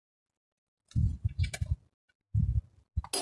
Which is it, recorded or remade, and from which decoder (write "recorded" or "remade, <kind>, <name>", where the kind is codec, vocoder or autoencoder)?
recorded